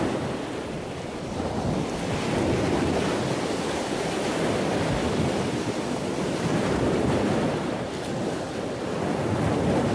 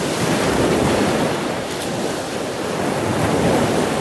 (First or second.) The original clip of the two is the second